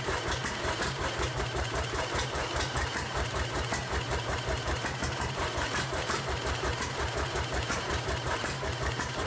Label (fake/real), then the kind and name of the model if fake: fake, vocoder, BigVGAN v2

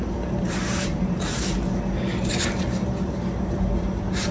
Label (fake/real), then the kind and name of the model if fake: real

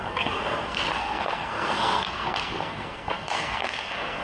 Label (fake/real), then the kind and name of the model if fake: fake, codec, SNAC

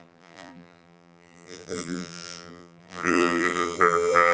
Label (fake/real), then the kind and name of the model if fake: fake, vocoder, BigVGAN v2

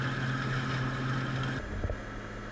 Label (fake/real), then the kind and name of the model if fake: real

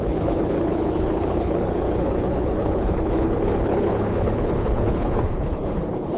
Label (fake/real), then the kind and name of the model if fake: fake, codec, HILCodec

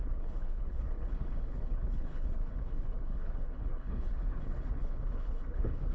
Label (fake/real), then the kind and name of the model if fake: fake, codec, HILCodec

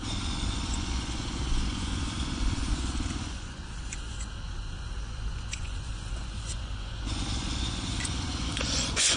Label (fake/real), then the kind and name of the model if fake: fake, vocoder, Vocos